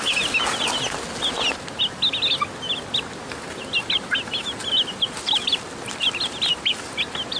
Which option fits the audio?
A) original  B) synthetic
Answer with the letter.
A